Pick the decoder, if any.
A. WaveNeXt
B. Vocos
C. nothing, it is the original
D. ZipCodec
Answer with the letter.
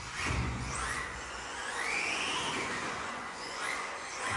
B